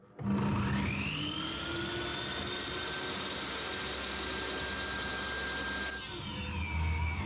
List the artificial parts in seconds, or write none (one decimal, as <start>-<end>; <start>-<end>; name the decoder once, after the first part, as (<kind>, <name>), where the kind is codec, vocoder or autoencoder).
none